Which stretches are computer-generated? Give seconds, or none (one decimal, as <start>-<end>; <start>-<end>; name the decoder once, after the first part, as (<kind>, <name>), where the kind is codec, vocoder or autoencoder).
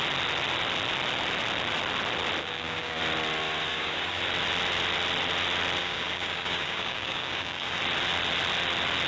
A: 2.4-3.0 (codec, DAC); 3.7-4.2; 5.8-7.8